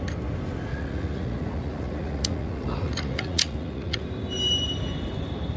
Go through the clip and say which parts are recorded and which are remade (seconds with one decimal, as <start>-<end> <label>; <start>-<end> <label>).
0.0-0.7 recorded; 0.7-4.0 remade; 4.0-5.6 recorded